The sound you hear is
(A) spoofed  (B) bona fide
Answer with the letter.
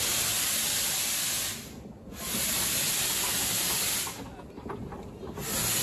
B